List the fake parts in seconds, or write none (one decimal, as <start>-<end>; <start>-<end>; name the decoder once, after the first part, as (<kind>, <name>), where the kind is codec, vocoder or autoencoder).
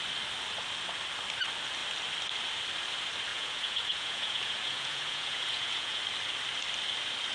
3.3-6.0 (vocoder, Vocos)